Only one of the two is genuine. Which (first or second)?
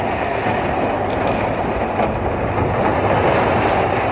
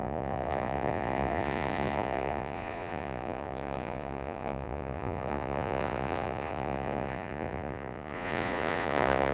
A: first